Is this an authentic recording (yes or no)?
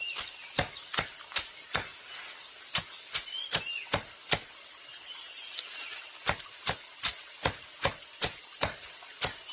yes